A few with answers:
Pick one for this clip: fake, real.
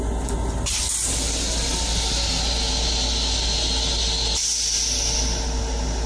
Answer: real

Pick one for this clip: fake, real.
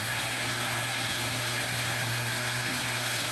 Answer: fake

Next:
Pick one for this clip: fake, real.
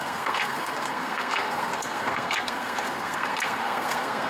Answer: fake